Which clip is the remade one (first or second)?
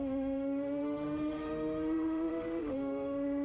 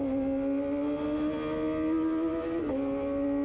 first